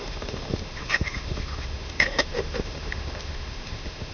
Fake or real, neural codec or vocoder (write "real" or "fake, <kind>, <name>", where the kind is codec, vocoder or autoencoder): fake, autoencoder, DAC-VAE